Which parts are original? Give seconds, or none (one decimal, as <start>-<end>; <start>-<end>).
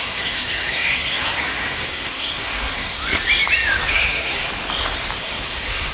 3.0-3.9; 4.4-5.2